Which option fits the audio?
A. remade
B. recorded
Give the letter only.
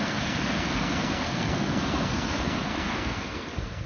A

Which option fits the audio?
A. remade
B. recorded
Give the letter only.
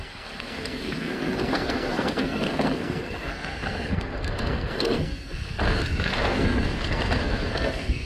A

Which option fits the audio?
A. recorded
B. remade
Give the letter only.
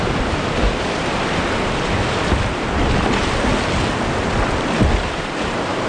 A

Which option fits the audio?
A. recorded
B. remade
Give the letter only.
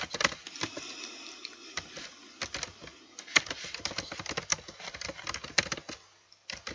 A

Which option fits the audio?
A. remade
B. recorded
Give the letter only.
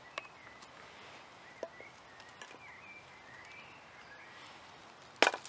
B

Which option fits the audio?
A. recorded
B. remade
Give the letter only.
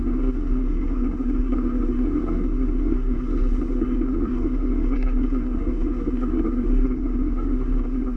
B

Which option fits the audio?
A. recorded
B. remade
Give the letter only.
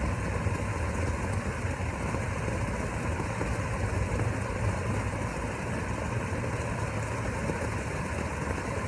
A